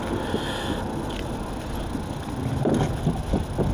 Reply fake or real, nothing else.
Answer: real